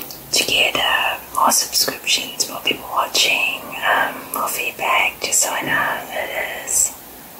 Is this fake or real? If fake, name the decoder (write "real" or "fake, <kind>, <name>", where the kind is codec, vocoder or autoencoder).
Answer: real